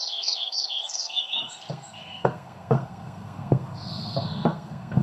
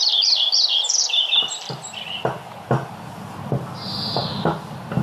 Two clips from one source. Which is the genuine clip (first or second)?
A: second